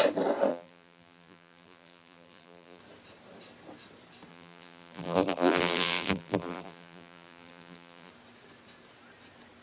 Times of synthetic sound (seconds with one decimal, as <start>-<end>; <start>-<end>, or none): 0.5-2.8; 4.3-8.1